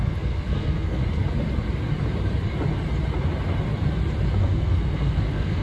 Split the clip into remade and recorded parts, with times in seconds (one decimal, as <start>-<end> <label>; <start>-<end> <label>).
0.0-1.0 remade; 1.0-4.4 recorded; 4.4-5.6 remade